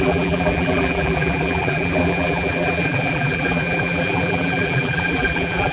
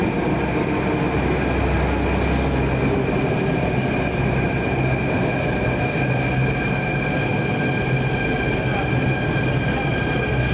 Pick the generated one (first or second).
first